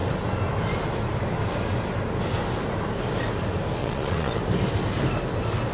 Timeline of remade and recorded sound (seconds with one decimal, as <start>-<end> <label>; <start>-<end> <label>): 0.0-3.8 recorded; 3.8-4.4 remade; 4.4-5.7 recorded